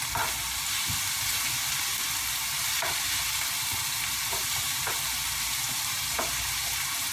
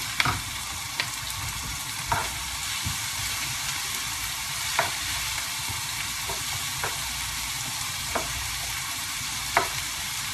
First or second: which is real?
first